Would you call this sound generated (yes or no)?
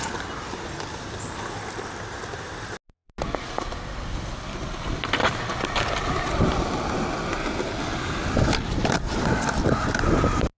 no